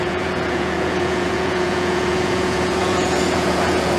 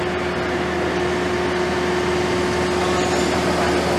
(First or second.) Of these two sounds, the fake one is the first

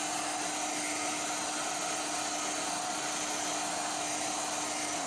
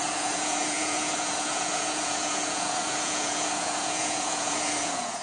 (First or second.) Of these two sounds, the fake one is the second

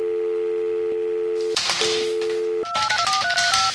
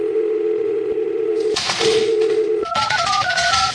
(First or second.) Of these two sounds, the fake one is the second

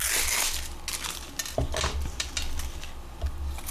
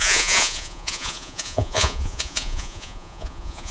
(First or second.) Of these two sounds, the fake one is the second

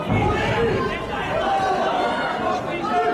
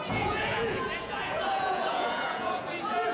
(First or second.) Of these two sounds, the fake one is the second